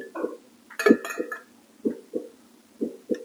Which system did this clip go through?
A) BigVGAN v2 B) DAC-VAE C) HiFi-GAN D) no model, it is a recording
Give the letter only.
D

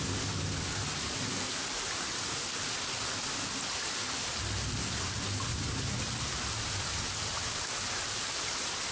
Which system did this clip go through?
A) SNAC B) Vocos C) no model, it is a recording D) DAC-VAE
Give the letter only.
C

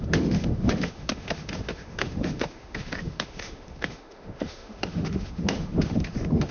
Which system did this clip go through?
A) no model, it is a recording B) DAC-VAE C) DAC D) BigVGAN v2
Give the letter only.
B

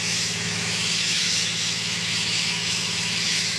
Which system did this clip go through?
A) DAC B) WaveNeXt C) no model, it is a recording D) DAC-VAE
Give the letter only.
D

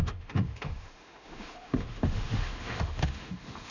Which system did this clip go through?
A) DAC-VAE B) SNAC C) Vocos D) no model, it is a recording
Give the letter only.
A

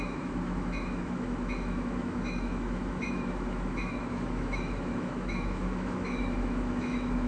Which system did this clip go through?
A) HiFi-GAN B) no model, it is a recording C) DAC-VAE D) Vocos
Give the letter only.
C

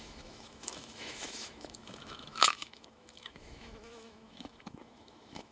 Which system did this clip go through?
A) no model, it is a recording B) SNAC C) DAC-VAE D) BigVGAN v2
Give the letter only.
C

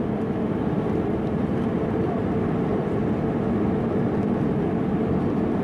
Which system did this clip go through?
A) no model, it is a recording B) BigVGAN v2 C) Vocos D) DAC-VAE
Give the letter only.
A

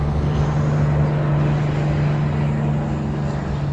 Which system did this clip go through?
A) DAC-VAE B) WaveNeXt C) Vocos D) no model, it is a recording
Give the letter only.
D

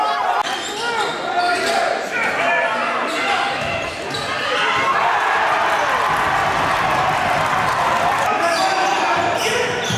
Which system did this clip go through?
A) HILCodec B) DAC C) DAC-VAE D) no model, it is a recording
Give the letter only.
D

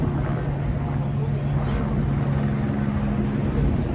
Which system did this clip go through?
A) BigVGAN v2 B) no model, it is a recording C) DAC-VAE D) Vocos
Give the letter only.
B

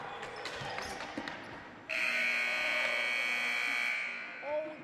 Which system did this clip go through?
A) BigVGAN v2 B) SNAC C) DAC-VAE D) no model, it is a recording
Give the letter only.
D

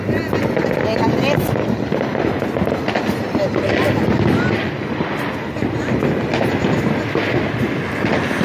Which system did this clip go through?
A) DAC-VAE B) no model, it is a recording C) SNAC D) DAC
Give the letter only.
B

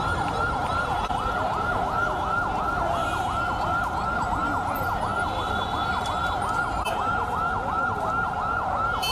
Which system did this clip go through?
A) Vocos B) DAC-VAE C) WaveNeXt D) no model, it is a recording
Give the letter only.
D